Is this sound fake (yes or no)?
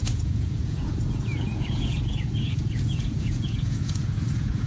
yes